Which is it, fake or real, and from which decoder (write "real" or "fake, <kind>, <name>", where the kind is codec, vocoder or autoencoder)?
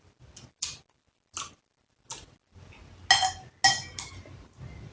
real